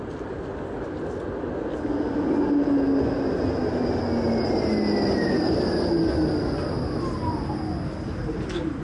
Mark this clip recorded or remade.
recorded